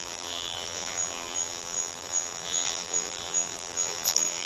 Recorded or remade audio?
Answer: remade